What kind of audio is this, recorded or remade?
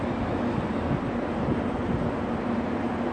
recorded